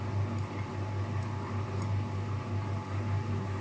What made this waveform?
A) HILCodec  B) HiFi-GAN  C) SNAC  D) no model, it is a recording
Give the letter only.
D